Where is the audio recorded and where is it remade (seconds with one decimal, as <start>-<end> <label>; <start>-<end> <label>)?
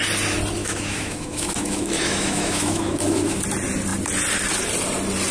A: 0.0-0.6 recorded; 0.6-3.4 remade; 3.4-5.3 recorded